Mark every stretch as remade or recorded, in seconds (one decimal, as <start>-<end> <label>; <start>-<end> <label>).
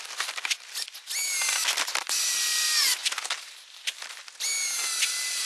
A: 0.0-5.5 recorded